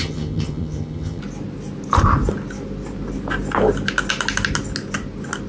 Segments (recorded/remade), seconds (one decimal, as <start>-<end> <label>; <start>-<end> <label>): 0.0-1.2 remade; 1.2-5.5 recorded

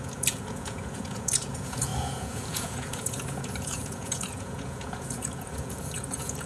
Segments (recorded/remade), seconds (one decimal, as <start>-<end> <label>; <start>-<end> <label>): 0.0-6.5 remade

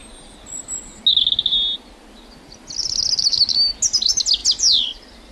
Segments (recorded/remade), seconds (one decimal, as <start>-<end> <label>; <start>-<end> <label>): 0.0-5.3 recorded

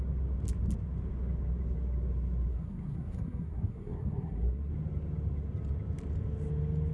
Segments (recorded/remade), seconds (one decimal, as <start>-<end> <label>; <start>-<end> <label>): 0.0-2.5 recorded; 2.5-4.7 remade; 4.7-6.9 recorded

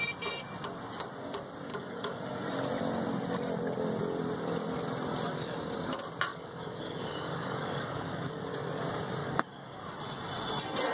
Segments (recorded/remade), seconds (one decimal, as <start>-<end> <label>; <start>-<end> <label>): 0.0-1.7 recorded; 1.7-2.2 remade; 2.2-6.3 recorded; 6.3-8.4 remade; 8.4-9.2 recorded; 9.2-9.8 remade; 9.8-10.9 recorded

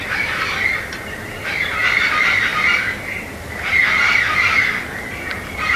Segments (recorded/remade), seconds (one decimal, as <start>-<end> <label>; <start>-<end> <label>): 0.0-2.5 remade; 2.5-3.0 recorded; 3.0-3.8 remade; 3.8-4.9 recorded; 4.9-5.8 remade

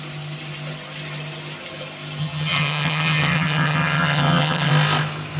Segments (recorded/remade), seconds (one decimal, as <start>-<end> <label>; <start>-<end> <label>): 0.0-2.2 recorded; 2.2-4.7 remade; 4.7-5.4 recorded